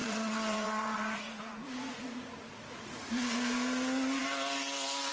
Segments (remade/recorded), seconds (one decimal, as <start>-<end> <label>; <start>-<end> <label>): 0.0-3.1 remade; 3.1-5.1 recorded